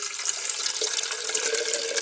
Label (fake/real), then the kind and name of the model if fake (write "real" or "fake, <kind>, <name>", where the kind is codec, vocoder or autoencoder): real